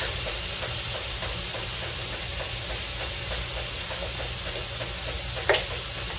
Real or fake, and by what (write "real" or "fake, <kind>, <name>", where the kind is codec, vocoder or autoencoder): real